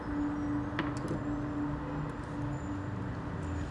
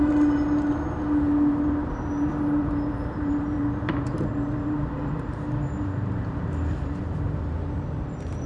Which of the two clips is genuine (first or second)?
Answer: first